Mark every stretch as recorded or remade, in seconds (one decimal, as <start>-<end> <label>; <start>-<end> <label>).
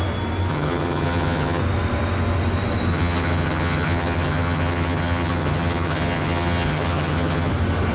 0.0-0.5 recorded; 0.5-1.6 remade; 1.6-2.9 recorded; 2.9-7.5 remade; 7.5-7.9 recorded